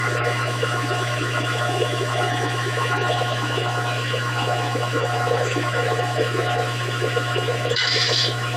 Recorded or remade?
remade